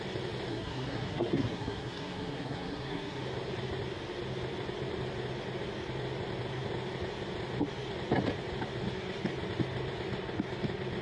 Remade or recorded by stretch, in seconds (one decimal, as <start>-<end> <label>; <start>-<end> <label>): 0.0-0.5 recorded; 0.5-3.2 remade; 3.2-11.0 recorded